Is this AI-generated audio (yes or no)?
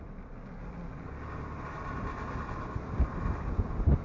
no